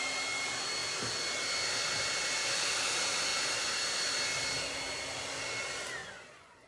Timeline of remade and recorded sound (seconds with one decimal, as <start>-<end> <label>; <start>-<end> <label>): 0.0-6.0 recorded; 6.0-6.7 remade